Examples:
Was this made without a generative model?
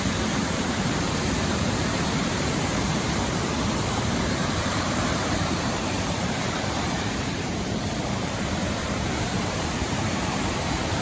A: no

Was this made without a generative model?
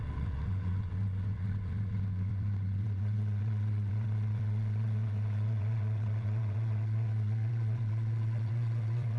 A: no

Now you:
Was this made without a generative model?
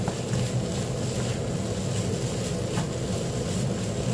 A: yes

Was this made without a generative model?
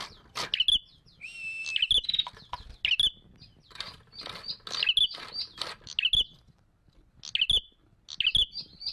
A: yes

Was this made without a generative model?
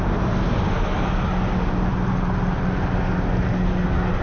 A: yes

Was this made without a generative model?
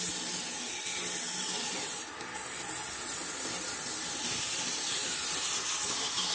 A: yes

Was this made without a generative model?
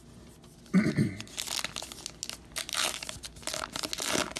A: yes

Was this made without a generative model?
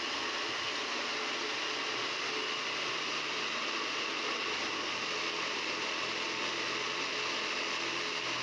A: yes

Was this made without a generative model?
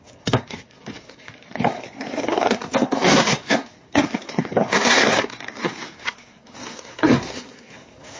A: no